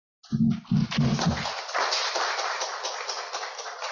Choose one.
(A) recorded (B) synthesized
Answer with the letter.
A